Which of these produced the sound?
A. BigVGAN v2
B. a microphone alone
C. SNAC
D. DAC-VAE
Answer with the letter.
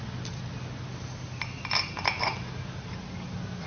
B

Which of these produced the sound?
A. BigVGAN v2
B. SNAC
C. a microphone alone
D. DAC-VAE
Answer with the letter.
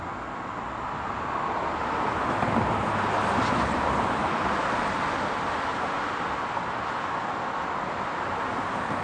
C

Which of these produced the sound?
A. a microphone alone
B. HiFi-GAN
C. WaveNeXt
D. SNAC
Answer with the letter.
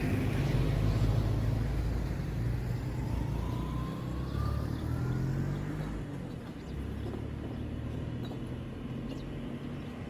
A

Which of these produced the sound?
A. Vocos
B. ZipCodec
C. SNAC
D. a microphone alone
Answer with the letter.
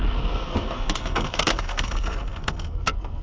C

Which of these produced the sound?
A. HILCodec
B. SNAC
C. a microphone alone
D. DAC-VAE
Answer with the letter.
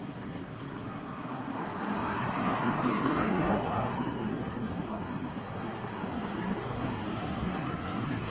B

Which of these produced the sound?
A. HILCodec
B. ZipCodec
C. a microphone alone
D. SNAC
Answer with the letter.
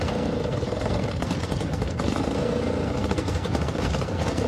D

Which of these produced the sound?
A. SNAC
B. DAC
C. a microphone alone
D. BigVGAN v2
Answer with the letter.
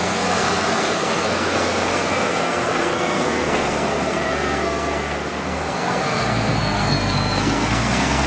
A